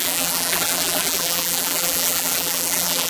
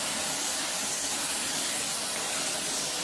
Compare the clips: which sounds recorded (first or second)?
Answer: second